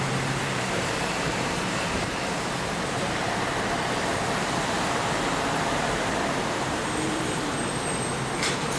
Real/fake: fake